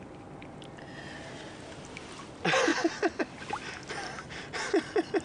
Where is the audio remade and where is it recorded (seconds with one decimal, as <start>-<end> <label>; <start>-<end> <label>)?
0.0-5.2 recorded